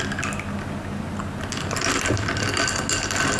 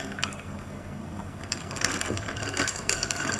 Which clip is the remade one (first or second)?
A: second